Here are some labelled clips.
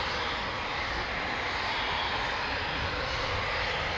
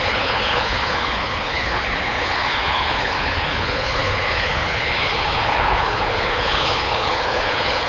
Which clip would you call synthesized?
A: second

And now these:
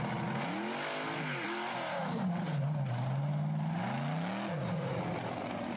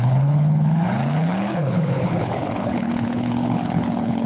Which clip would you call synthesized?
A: second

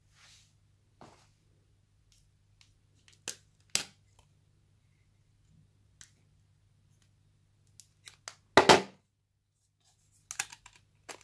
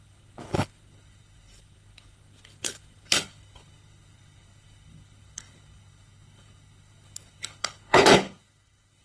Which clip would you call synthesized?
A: second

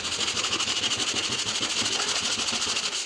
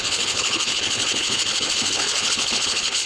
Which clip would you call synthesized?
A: second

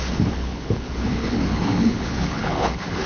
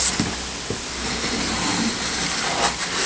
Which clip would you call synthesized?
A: first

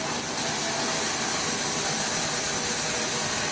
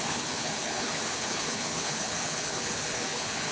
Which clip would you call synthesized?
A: second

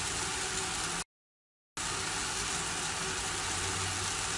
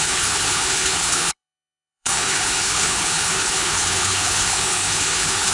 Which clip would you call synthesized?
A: second